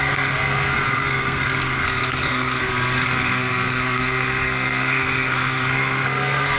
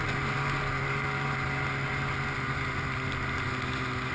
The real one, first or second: second